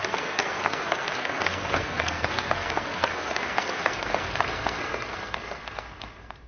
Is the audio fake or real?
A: fake